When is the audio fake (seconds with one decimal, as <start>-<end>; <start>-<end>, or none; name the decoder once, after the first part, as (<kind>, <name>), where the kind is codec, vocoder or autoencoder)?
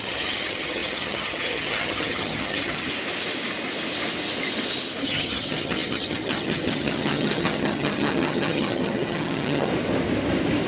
0.0-2.9 (vocoder, HiFi-GAN); 5.0-9.7